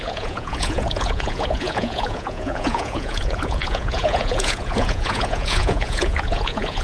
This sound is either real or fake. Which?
fake